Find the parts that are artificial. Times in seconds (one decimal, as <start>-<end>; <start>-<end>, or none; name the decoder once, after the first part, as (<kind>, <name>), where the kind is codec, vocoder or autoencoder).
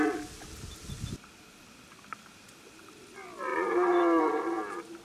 none